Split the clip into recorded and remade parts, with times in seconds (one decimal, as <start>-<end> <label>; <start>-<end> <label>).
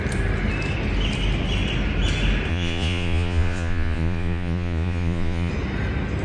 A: 0.0-2.5 recorded; 2.5-5.5 remade; 5.5-6.2 recorded